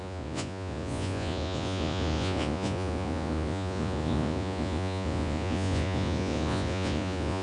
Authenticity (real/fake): fake